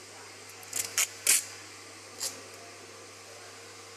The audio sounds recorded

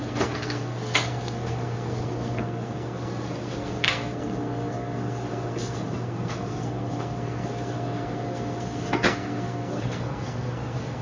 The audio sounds remade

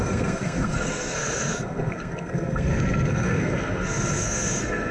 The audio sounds remade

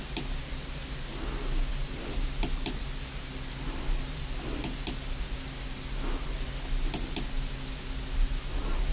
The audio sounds recorded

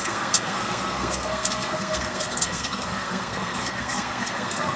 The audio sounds remade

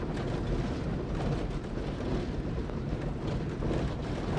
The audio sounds recorded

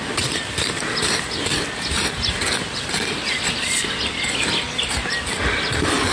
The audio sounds recorded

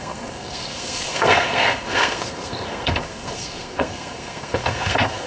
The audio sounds remade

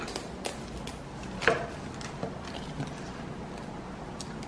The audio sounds recorded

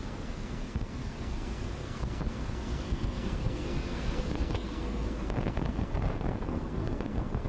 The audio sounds remade